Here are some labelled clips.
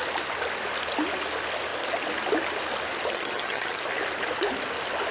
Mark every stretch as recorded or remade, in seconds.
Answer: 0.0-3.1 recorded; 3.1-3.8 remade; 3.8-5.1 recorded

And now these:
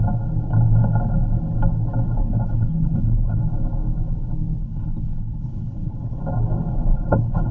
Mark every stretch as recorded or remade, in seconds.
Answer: 0.0-2.2 recorded; 2.2-3.4 remade; 3.4-4.6 recorded; 4.6-6.2 remade; 6.2-6.9 recorded; 6.9-7.5 remade

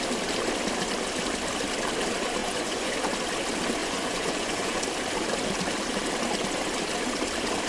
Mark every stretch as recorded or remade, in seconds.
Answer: 0.0-2.4 recorded; 2.4-2.9 remade; 2.9-3.8 recorded; 3.8-4.8 remade; 4.8-7.7 recorded

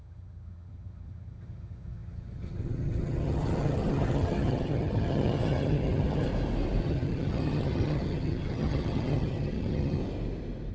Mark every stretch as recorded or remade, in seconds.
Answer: 0.0-6.3 remade; 6.3-6.8 recorded; 6.8-10.0 remade; 10.0-10.7 recorded

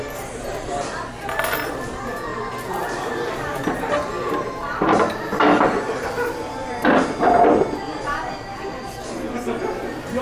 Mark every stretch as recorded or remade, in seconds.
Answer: 0.0-2.3 recorded; 2.3-3.4 remade; 3.4-4.7 recorded; 4.7-6.5 remade; 6.5-10.2 recorded

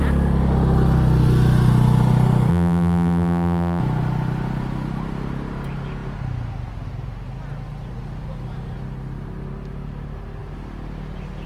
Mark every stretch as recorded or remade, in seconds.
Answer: 0.0-2.5 recorded; 2.5-3.8 remade; 3.8-11.5 recorded

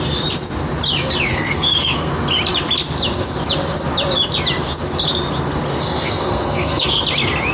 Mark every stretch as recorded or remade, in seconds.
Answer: 0.0-1.3 recorded; 1.3-2.1 remade; 2.1-5.7 recorded; 5.7-7.0 remade; 7.0-7.5 recorded